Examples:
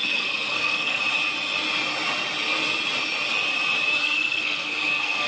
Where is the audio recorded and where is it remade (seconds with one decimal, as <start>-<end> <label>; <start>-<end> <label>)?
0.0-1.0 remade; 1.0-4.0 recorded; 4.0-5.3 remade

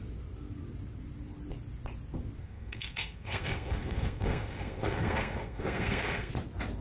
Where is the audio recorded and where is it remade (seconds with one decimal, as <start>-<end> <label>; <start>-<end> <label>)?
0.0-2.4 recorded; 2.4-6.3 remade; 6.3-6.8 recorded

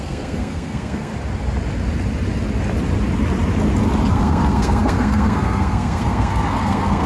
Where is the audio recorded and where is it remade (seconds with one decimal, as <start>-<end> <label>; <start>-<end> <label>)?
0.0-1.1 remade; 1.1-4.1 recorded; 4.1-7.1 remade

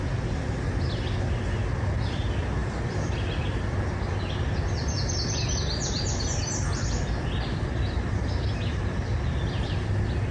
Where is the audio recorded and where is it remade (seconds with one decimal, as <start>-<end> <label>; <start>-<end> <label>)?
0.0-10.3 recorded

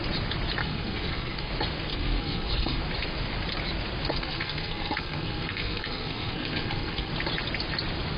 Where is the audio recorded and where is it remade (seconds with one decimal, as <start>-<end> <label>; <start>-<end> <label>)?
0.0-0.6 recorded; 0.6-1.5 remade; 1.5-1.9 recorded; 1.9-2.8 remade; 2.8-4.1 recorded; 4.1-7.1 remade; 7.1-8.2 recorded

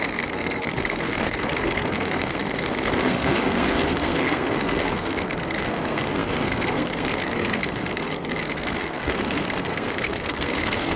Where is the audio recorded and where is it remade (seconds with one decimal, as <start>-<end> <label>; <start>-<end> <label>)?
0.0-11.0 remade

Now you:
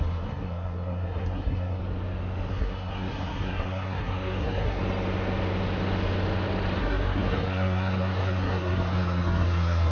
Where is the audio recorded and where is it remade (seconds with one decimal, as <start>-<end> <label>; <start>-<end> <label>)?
0.0-1.8 remade; 1.8-2.5 recorded; 2.5-4.8 remade; 4.8-6.8 recorded; 6.8-9.9 remade

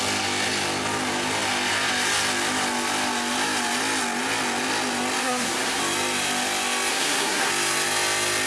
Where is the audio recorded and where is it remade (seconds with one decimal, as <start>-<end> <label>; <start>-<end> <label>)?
0.0-5.2 recorded; 5.2-5.8 remade; 5.8-6.9 recorded; 6.9-7.5 remade; 7.5-8.5 recorded